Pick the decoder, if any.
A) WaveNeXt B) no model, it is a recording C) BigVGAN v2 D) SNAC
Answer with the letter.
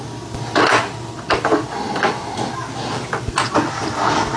B